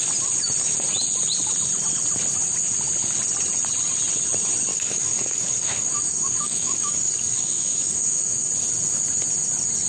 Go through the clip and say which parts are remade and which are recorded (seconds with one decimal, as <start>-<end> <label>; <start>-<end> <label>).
0.0-4.7 recorded; 4.7-8.5 remade; 8.5-9.9 recorded